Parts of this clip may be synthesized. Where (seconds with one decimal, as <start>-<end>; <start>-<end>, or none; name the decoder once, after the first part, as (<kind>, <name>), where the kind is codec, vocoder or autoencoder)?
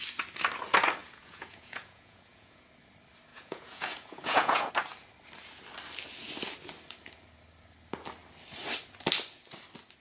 1.0-2.7 (vocoder, Vocos); 3.3-4.7